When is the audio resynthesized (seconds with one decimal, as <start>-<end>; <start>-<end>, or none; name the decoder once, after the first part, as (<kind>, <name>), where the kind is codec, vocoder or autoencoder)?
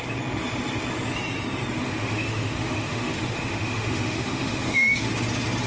1.8-5.1 (autoencoder, DAC-VAE)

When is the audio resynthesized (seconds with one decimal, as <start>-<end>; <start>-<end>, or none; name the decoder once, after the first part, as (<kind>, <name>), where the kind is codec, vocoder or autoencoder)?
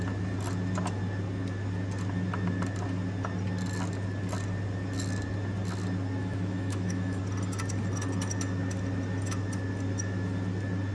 6.2-7.2 (autoencoder, DAC-VAE)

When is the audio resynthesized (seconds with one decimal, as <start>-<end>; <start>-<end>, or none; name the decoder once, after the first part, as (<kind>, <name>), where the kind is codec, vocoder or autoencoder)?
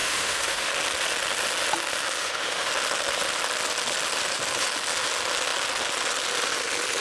0.0-0.7 (autoencoder, DAC-VAE); 2.2-2.7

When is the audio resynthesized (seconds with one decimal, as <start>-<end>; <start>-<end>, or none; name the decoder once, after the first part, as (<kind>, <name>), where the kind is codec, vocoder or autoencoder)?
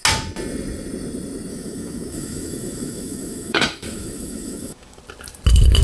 1.5-5.0 (autoencoder, DAC-VAE)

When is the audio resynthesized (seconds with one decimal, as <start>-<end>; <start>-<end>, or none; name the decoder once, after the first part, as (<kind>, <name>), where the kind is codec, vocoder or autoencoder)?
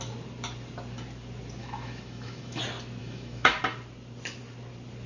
1.6-2.6 (autoencoder, DAC-VAE); 3.0-3.6